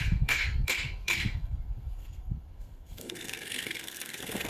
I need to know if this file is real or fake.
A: fake